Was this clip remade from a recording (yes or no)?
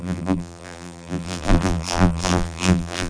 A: yes